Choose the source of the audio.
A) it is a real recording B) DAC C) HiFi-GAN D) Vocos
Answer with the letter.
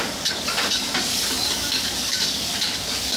B